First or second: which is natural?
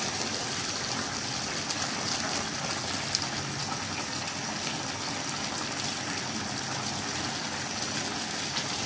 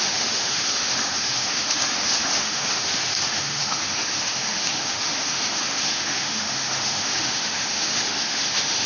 first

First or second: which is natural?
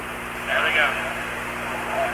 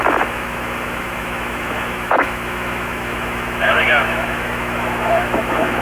first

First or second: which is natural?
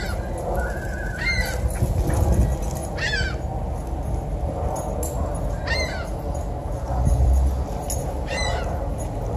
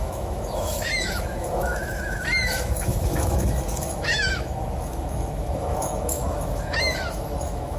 first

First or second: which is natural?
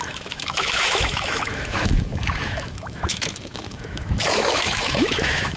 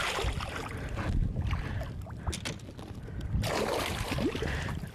second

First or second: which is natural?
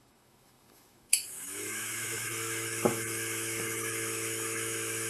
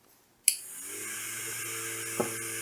second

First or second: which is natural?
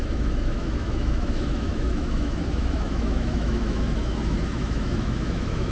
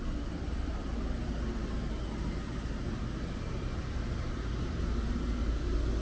second